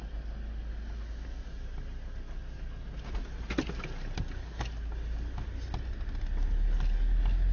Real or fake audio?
real